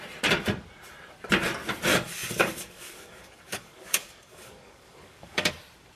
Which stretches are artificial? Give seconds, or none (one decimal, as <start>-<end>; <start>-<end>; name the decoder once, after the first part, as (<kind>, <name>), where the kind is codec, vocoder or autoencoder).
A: 1.9-5.5 (codec, DAC)